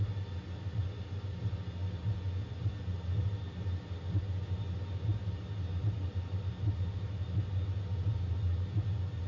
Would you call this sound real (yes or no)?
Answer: yes